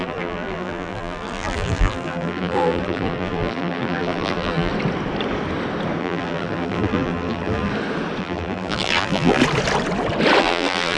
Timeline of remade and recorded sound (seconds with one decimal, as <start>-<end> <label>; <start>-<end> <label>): 0.0-4.7 remade; 4.7-6.0 recorded; 6.0-7.7 remade; 7.7-8.2 recorded; 8.2-9.4 remade; 9.4-10.4 recorded; 10.4-11.0 remade